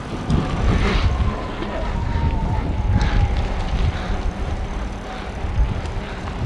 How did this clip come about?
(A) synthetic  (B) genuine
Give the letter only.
B